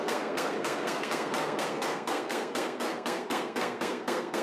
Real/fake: fake